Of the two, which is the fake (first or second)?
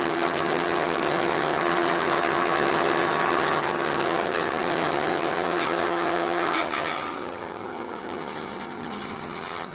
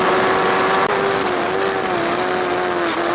first